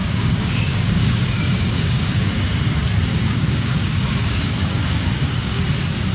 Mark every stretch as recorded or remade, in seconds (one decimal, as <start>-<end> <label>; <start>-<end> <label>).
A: 0.0-2.1 remade; 2.1-3.1 recorded; 3.1-5.6 remade; 5.6-6.1 recorded